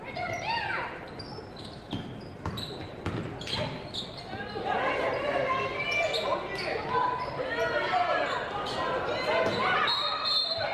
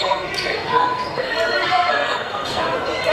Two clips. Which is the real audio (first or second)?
first